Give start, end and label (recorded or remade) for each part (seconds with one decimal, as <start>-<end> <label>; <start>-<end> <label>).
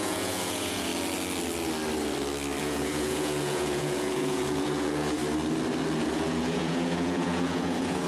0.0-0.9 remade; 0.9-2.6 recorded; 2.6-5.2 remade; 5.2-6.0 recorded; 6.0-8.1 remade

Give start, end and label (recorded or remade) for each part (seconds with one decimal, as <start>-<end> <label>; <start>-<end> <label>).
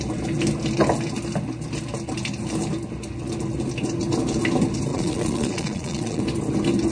0.0-4.9 recorded; 4.9-6.2 remade; 6.2-6.9 recorded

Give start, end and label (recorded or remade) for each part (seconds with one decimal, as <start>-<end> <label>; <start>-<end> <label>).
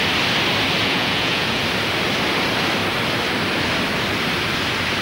0.0-0.8 recorded; 0.8-1.6 remade; 1.6-5.0 recorded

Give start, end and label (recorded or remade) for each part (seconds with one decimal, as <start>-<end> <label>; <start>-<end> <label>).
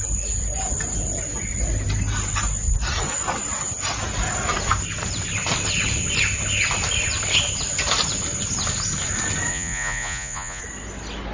0.0-9.5 recorded; 9.5-10.6 remade; 10.6-11.3 recorded